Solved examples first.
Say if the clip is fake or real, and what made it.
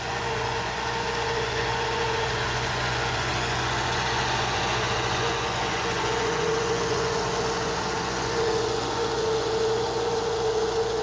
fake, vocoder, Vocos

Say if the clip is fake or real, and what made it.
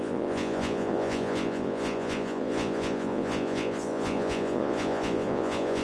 fake, vocoder, Vocos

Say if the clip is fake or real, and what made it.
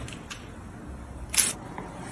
real